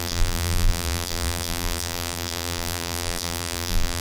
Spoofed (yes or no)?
yes